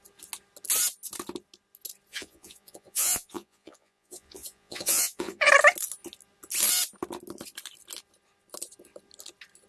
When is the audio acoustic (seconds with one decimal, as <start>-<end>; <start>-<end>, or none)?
0.0-2.1; 5.5-9.7